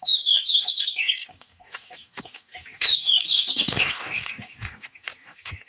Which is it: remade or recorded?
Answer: remade